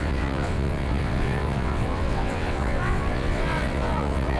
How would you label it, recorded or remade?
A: remade